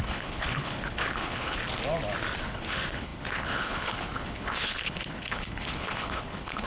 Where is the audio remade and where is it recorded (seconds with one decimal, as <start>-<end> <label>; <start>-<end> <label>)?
0.0-1.6 remade; 1.6-2.4 recorded; 2.4-6.7 remade